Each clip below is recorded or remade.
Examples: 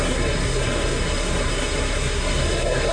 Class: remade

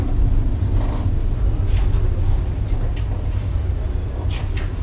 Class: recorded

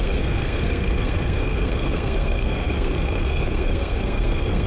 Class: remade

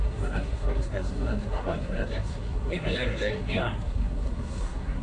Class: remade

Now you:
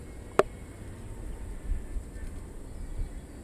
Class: recorded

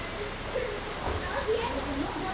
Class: recorded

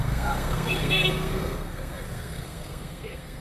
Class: remade